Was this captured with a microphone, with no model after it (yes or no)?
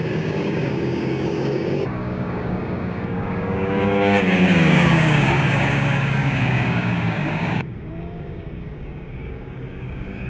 no